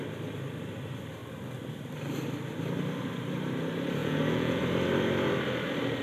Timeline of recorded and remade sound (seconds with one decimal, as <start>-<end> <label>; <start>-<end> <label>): 0.0-4.0 recorded; 4.0-4.6 remade; 4.6-6.0 recorded